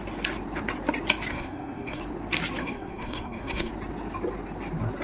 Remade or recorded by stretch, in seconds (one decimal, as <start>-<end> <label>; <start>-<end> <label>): 0.0-1.3 recorded; 1.3-2.0 remade; 2.0-2.6 recorded; 2.6-3.7 remade; 3.7-5.0 recorded